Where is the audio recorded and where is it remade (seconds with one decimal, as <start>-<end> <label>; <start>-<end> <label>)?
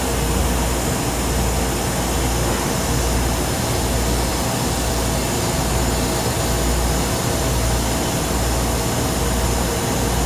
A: 0.0-10.3 recorded